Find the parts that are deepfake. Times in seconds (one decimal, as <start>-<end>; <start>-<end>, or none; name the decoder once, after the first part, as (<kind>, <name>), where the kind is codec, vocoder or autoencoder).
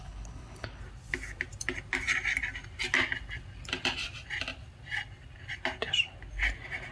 0.0-0.8 (codec, HILCodec)